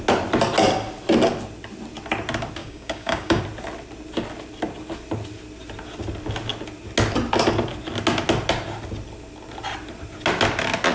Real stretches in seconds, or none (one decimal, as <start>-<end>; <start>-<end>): 0.0-2.6; 3.4-10.9

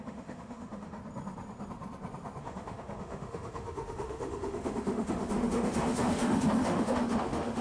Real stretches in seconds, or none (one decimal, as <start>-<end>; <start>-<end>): 1.0-2.4

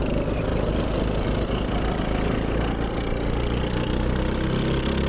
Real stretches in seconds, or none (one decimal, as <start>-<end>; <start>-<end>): 0.0-5.1